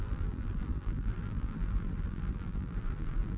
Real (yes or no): no